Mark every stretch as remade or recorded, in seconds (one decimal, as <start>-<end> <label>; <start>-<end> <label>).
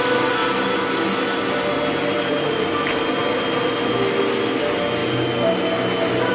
0.0-6.3 recorded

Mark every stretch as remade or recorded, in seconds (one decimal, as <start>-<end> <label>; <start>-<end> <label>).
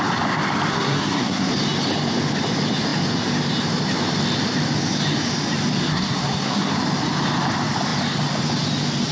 0.0-0.7 recorded; 0.7-1.5 remade; 1.5-5.9 recorded; 5.9-6.7 remade; 6.7-9.1 recorded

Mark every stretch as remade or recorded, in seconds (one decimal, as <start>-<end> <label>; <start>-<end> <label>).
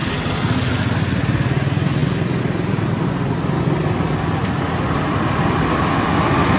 0.0-6.6 recorded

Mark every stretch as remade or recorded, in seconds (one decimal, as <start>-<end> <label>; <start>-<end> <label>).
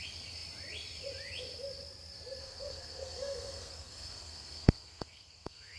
0.0-2.4 recorded; 2.4-5.8 remade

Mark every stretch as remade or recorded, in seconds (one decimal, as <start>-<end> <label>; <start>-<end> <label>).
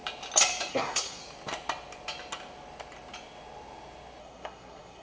0.0-0.7 recorded; 0.7-1.2 remade; 1.2-4.2 recorded; 4.2-5.0 remade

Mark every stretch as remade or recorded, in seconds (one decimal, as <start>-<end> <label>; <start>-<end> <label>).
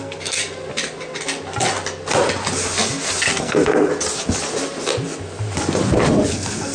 0.0-0.4 remade; 0.4-3.4 recorded; 3.4-3.9 remade; 3.9-6.3 recorded; 6.3-6.7 remade